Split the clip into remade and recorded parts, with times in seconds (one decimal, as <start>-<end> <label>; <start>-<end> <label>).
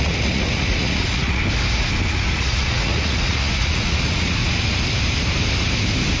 0.0-1.4 remade; 1.4-2.1 recorded; 2.1-4.4 remade; 4.4-6.2 recorded